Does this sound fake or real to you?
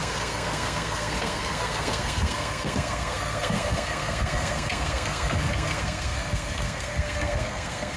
fake